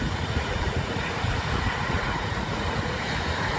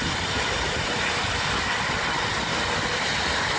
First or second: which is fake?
first